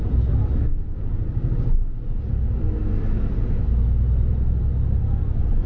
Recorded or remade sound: recorded